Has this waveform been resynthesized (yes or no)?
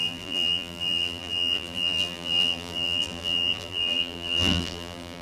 yes